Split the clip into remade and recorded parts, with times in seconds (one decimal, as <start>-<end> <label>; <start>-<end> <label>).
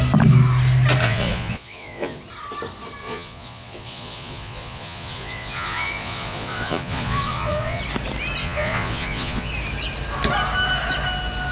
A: 0.0-1.0 recorded; 1.0-2.2 remade; 2.2-3.0 recorded; 3.0-7.8 remade; 7.8-8.4 recorded; 8.4-9.5 remade; 9.5-11.5 recorded